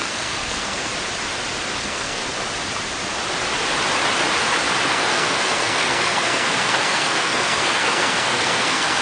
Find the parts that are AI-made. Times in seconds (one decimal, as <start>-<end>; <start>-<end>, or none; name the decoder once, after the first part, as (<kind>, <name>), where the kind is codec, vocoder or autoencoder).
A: 0.0-0.9 (codec, SNAC); 1.8-2.2; 4.9-9.0